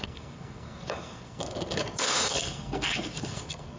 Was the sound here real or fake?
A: fake